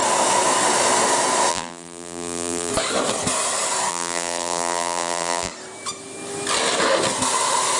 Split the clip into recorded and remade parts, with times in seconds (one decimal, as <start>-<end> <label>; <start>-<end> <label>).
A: 0.0-1.5 recorded; 1.5-2.7 remade; 2.7-3.9 recorded; 3.9-5.5 remade; 5.5-7.8 recorded